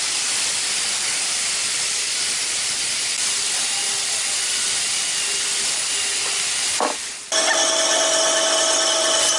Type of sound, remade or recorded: recorded